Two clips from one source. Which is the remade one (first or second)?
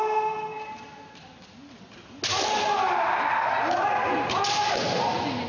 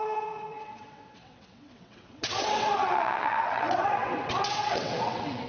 second